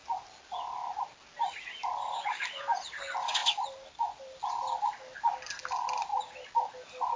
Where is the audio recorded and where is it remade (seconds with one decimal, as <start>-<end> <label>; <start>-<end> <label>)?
0.0-7.2 recorded